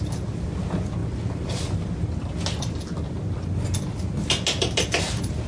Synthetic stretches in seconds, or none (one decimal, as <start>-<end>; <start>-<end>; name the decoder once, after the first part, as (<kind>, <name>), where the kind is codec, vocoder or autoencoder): none